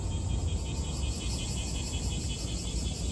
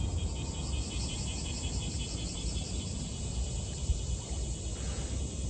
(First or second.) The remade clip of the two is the second